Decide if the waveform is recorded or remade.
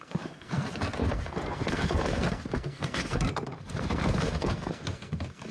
remade